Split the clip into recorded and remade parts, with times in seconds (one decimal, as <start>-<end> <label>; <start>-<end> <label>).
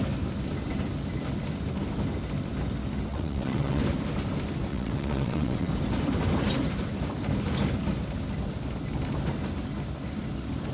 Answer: 0.0-3.1 recorded; 3.1-3.8 remade; 3.8-4.7 recorded; 4.7-5.7 remade; 5.7-10.7 recorded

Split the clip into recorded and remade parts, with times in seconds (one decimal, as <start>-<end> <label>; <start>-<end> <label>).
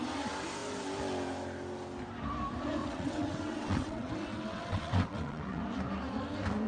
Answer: 0.0-2.8 recorded; 2.8-5.6 remade; 5.6-6.7 recorded